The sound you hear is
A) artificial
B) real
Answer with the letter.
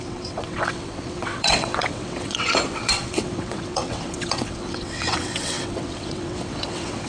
A